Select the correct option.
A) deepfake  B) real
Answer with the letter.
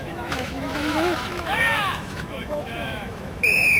A